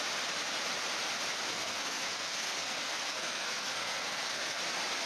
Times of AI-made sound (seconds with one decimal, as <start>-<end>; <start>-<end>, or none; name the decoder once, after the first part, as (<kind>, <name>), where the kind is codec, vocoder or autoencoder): 1.5-4.6 (codec, SNAC)